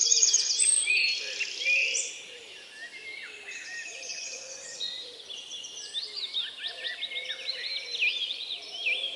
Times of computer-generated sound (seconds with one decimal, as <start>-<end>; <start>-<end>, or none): 0.0-0.9; 4.1-4.9; 8.1-8.6